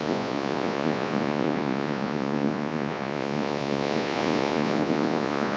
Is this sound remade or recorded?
remade